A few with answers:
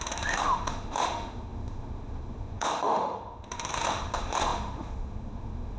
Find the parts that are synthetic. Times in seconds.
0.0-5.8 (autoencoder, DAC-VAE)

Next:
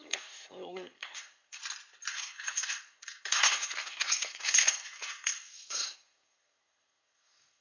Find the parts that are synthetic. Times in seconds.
0.0-1.6 (codec, SNAC); 2.1-7.6

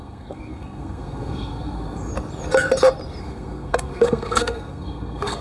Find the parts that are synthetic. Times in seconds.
0.0-2.1 (codec, SNAC); 3.2-5.4

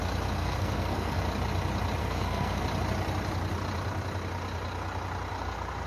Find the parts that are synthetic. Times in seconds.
0.4-1.2 (codec, SNAC); 2.0-2.6

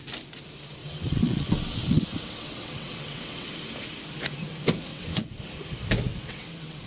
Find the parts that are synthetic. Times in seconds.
0.8-3.5 (vocoder, WaveNeXt); 4.9-5.4; 6.1-6.9

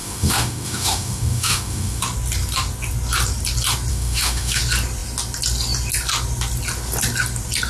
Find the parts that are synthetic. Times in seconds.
0.0-2.0 (autoencoder, DAC-VAE); 3.9-4.6

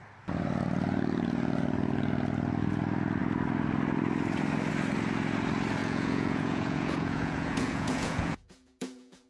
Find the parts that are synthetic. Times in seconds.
5.8-9.3 (vocoder, Vocos)